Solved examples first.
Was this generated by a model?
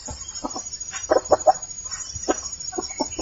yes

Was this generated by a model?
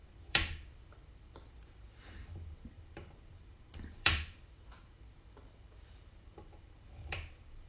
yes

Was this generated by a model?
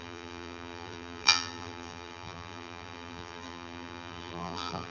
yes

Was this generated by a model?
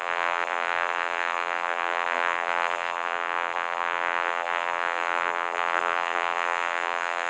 yes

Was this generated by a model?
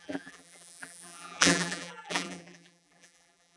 yes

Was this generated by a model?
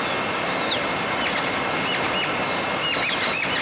no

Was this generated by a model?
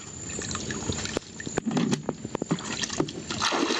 no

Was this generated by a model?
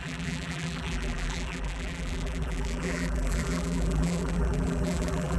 yes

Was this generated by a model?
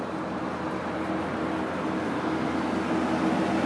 no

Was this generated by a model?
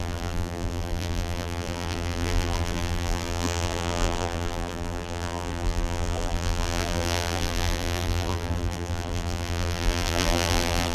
yes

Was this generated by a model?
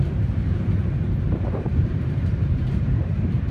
yes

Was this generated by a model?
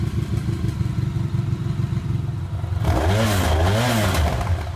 no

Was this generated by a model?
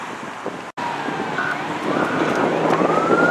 no